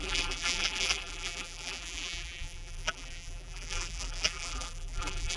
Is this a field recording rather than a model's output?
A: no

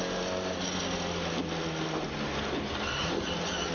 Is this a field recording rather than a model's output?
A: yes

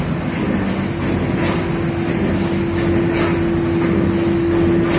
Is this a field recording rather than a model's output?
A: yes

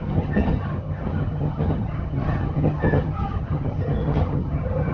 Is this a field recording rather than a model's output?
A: no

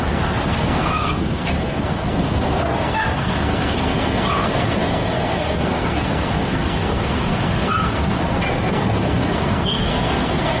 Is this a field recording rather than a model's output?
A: no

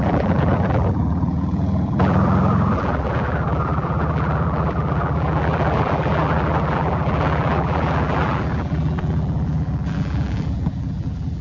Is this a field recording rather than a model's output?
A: no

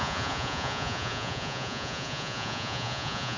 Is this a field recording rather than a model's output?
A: no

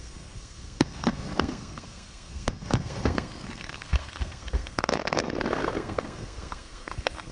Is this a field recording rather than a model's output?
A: no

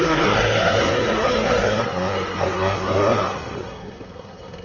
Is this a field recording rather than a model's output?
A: no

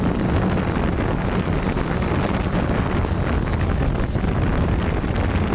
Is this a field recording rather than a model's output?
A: yes